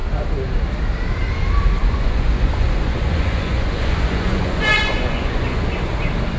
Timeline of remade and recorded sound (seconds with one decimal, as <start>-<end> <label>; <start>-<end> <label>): 0.0-1.8 recorded; 1.8-5.6 remade; 5.6-6.4 recorded